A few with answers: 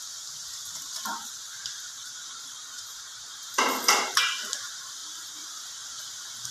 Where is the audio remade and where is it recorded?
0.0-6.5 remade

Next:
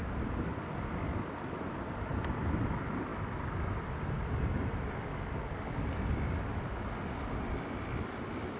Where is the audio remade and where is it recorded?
0.0-2.2 remade; 2.2-8.6 recorded